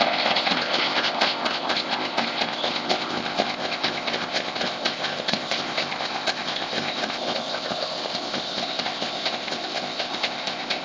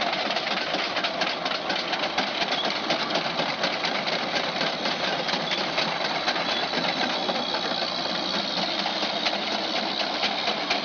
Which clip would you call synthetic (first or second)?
first